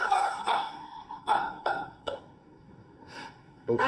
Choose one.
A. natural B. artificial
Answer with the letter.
B